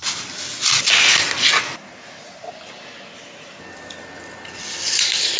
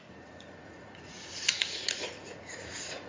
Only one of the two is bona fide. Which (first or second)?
first